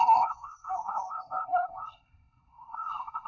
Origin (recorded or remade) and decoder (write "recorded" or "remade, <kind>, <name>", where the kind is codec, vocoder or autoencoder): remade, codec, SNAC